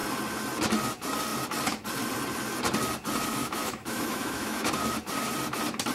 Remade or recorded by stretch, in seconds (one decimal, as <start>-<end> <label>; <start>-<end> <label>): 0.0-3.4 recorded; 3.4-4.7 remade; 4.7-5.9 recorded